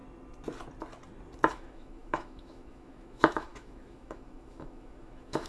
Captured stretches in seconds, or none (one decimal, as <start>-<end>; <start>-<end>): 0.0-1.5